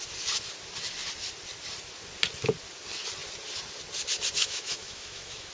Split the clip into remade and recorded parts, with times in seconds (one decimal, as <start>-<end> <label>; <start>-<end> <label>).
0.0-4.4 recorded; 4.4-5.5 remade